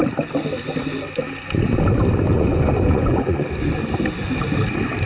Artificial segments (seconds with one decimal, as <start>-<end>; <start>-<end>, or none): 2.3-3.5